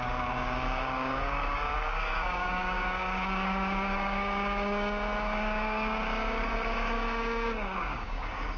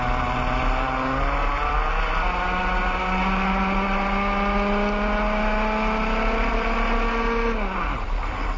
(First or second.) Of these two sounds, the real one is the second